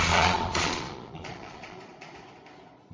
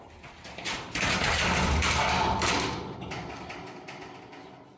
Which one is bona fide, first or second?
second